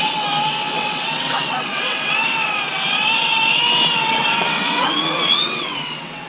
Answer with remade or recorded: remade